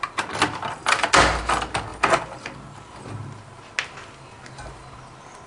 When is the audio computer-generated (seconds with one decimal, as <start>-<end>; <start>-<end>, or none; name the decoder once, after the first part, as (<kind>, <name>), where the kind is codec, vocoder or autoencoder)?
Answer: none